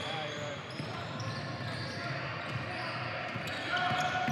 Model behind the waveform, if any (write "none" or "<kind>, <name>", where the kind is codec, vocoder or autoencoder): none